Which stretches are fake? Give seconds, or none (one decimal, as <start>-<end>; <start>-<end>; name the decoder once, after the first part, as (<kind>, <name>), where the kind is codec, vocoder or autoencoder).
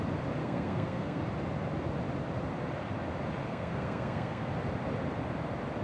0.4-1.2 (codec, SNAC); 3.5-4.5